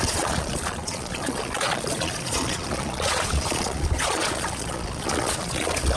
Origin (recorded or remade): remade